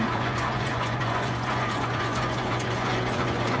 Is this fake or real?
fake